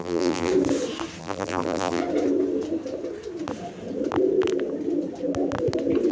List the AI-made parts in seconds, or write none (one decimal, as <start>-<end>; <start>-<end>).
0.0-0.5; 1.2-2.0